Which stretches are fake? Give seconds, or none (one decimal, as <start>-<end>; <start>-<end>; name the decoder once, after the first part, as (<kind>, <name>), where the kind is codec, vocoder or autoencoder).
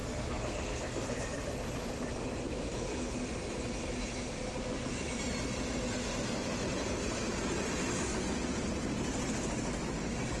0.0-1.2 (codec, SNAC)